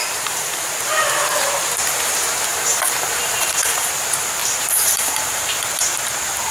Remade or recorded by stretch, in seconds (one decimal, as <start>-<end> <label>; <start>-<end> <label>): 0.0-0.7 remade; 0.7-2.5 recorded; 2.5-3.9 remade; 3.9-4.4 recorded; 4.4-5.6 remade; 5.6-6.5 recorded